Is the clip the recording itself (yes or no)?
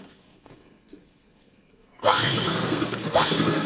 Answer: no